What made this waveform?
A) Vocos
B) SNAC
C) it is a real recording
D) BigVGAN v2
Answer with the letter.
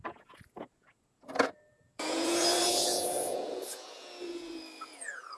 A